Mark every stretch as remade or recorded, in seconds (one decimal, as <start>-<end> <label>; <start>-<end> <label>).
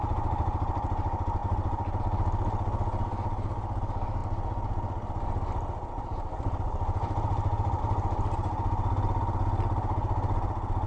0.0-10.9 recorded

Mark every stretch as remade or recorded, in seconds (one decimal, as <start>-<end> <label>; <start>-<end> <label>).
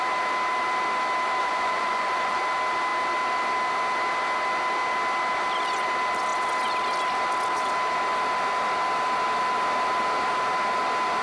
0.0-1.4 recorded; 1.4-2.4 remade; 2.4-11.2 recorded